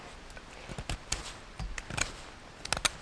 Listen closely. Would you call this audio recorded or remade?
recorded